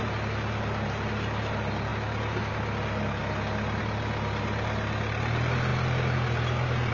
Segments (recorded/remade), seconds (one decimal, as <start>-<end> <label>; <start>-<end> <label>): 0.0-6.9 recorded